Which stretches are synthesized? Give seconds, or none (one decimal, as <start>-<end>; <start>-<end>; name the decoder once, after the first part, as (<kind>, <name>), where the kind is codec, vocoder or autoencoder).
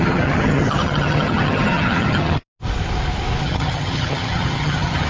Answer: 0.0-2.4 (vocoder, HiFi-GAN); 3.4-5.1